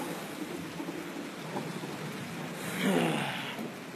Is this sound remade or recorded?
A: recorded